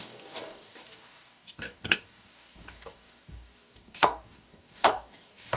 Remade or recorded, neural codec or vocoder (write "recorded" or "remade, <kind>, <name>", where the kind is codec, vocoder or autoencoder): remade, codec, DAC